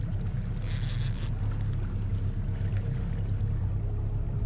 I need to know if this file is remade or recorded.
recorded